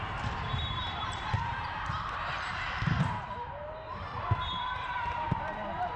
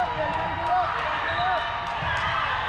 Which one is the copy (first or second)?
first